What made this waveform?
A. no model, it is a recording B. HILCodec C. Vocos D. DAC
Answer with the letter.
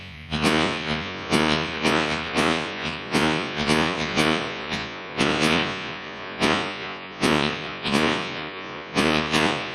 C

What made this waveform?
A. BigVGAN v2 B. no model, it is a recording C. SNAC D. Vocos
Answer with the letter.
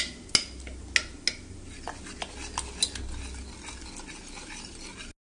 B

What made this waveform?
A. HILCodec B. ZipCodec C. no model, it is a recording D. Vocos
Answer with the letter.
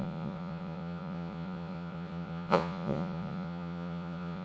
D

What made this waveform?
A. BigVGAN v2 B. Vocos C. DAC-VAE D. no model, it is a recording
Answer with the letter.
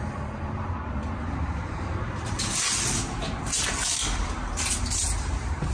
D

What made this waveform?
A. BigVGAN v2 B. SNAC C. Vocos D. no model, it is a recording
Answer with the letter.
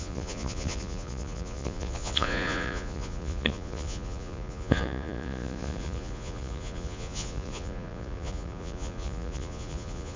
C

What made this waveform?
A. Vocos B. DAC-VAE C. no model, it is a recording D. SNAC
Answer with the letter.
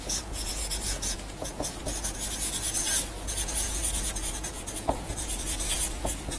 A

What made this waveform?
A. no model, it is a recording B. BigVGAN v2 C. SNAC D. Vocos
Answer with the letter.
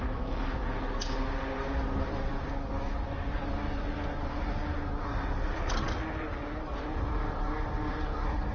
A